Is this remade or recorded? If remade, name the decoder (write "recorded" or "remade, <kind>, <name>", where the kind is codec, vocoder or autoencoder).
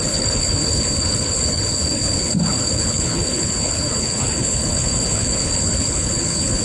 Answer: remade, codec, HILCodec